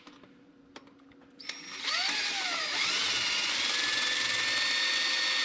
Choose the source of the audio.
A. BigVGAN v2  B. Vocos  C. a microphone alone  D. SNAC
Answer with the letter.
C